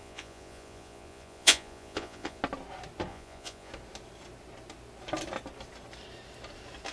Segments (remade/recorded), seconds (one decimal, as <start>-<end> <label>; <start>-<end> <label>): 0.0-2.4 remade; 2.4-3.1 recorded; 3.1-3.7 remade; 3.7-6.9 recorded